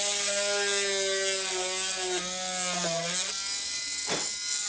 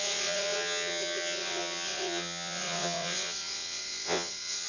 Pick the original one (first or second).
first